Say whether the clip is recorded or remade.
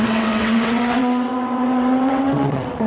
remade